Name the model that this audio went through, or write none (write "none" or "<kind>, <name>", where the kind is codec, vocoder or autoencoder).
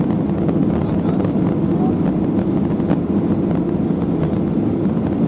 none